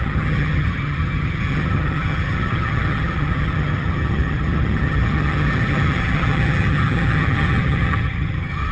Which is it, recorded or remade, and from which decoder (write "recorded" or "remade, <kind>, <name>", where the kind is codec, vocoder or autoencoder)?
remade, vocoder, HiFi-GAN